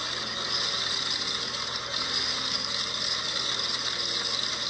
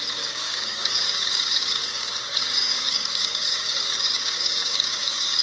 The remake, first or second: second